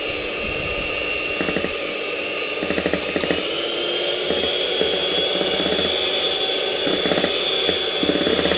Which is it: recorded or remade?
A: recorded